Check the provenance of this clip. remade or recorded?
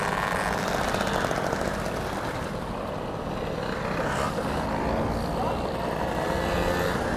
recorded